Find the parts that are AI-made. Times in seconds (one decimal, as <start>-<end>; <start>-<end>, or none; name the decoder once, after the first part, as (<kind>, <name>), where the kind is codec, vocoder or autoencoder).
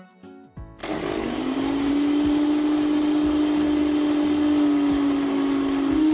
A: none